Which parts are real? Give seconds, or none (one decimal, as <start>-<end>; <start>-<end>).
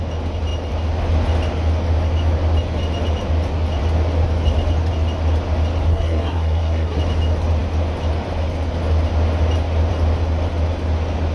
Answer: 0.0-5.9; 7.0-11.3